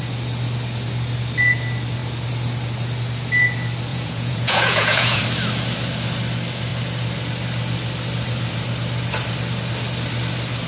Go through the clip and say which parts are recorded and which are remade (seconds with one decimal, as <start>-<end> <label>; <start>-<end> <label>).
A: 0.0-3.9 recorded; 3.9-5.2 remade; 5.2-10.7 recorded